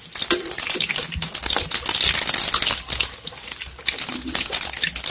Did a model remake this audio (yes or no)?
no